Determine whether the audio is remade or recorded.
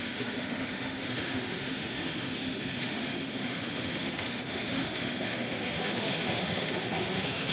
remade